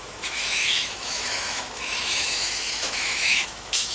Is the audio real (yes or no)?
no